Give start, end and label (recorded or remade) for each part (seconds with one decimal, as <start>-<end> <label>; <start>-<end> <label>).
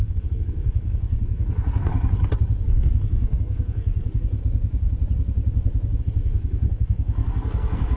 0.0-1.9 remade; 1.9-2.6 recorded; 2.6-4.4 remade; 4.4-6.0 recorded; 6.0-8.0 remade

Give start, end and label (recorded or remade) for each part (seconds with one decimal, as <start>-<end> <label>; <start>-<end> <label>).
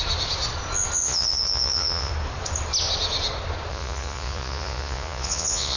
0.0-1.0 recorded; 1.0-2.1 remade; 2.1-3.7 recorded; 3.7-5.8 remade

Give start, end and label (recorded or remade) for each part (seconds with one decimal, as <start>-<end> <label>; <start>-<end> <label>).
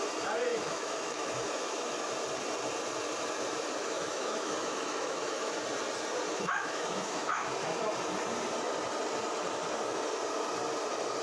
0.0-0.5 recorded; 0.5-2.1 remade; 2.1-3.8 recorded; 3.8-5.6 remade; 5.6-6.3 recorded; 6.3-7.5 remade; 7.5-11.2 recorded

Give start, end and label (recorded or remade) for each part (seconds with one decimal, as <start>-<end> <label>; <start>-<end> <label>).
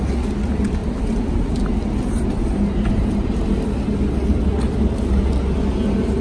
0.0-0.8 recorded; 0.8-2.9 remade; 2.9-6.2 recorded